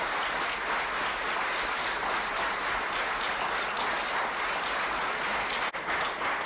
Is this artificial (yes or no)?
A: no